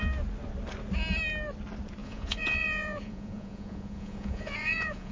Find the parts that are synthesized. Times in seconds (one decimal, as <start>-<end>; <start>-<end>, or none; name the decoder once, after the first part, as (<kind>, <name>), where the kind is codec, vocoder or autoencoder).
2.0-5.1 (vocoder, Vocos)